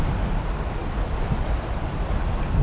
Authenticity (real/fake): real